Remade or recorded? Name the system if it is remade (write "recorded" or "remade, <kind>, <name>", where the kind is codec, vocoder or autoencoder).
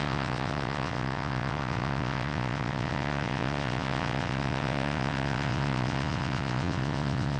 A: remade, vocoder, WaveNeXt